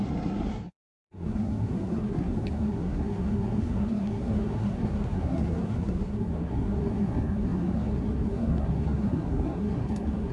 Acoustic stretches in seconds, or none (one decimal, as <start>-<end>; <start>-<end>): none